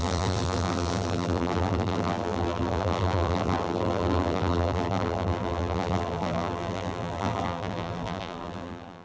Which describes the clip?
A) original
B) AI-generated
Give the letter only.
B